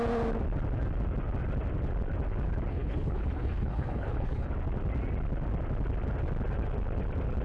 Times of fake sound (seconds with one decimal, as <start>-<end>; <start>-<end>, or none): 2.7-4.5